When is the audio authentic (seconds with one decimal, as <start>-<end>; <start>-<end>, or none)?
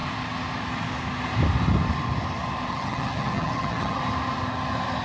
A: 0.0-2.7; 4.0-5.0